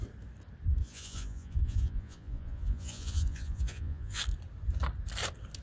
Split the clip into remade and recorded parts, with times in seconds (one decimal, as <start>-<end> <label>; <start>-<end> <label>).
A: 0.0-0.8 recorded; 0.8-4.2 remade; 4.2-5.6 recorded